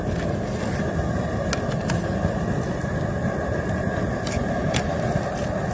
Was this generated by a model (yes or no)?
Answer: no